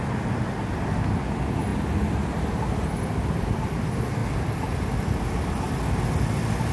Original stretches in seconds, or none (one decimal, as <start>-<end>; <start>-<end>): 0.0-6.7